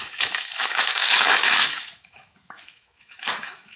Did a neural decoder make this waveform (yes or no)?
yes